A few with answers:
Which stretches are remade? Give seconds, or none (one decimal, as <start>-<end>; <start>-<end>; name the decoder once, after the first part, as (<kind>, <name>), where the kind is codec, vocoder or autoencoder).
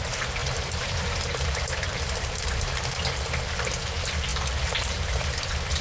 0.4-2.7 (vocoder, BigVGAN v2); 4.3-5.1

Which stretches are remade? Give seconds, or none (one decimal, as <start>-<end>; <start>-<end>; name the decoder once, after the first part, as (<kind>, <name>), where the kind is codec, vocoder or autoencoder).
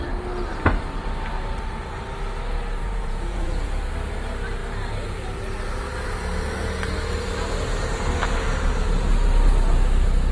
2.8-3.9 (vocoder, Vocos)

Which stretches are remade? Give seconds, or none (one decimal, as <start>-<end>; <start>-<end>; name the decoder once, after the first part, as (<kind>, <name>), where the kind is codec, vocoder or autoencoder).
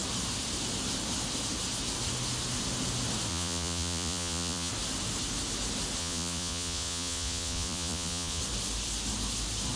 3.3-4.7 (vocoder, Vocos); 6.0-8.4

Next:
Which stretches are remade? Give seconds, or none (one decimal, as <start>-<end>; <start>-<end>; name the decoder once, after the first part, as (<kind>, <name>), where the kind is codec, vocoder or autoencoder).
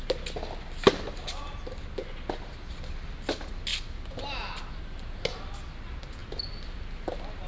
none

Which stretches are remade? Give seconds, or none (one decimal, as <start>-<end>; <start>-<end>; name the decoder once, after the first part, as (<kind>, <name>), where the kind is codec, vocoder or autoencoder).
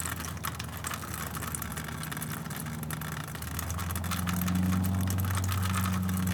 none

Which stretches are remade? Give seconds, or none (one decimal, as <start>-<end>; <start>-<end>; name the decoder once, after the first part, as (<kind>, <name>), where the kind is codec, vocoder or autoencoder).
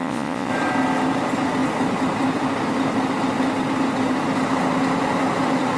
0.0-0.5 (vocoder, Vocos)